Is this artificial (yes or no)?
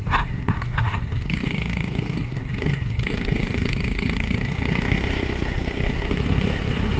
yes